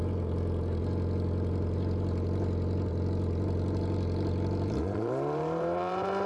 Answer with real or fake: fake